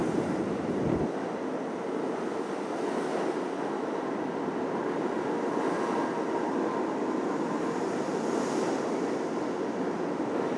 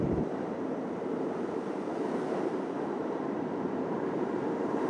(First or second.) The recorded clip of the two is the first